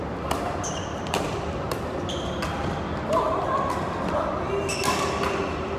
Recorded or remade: recorded